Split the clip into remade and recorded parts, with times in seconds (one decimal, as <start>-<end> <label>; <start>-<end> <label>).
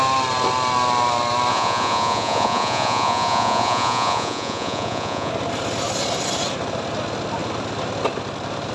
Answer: 0.0-1.5 recorded; 1.5-5.3 remade; 5.3-8.7 recorded